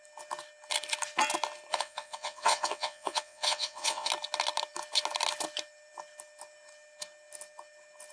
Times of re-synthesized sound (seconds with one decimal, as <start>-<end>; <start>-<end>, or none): 1.7-4.1